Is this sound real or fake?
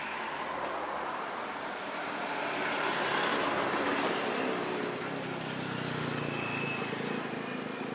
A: real